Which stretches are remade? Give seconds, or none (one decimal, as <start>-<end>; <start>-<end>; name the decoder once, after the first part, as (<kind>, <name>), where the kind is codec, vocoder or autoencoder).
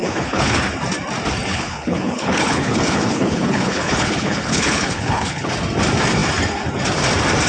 0.0-0.6 (codec, HILCodec); 1.5-5.5